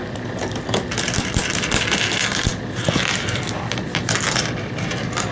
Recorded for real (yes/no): yes